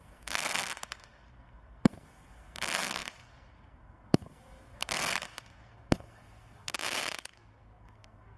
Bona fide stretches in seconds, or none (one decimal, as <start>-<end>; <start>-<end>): 6.7-7.2